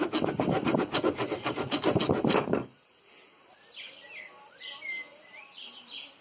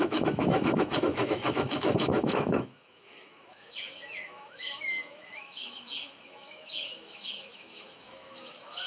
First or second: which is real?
first